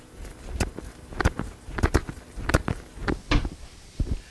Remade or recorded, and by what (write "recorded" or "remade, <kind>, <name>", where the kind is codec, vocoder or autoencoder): recorded